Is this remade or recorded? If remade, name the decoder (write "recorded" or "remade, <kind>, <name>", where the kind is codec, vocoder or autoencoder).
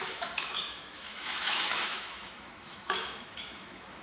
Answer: remade, autoencoder, DAC-VAE